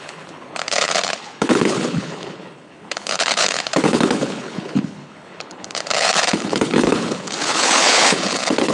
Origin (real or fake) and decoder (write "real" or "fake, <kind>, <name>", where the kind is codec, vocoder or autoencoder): fake, codec, HILCodec